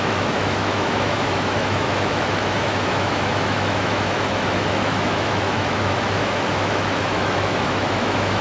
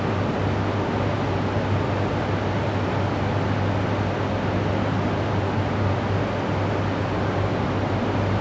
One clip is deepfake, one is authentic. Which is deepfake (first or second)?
first